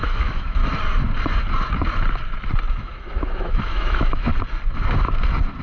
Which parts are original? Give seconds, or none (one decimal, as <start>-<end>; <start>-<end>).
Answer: 0.6-2.7; 4.3-5.6